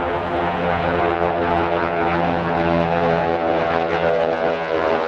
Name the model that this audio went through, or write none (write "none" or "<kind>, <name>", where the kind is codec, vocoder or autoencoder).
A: vocoder, Vocos